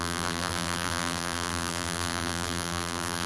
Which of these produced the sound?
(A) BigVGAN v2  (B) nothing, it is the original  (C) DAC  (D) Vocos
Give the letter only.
A